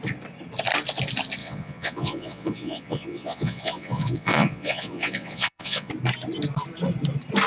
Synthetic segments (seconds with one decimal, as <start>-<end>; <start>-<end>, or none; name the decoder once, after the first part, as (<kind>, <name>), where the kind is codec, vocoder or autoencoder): 1.4-5.9 (vocoder, Vocos)